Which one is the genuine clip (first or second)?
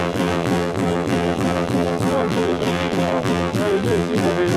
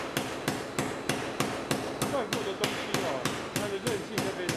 second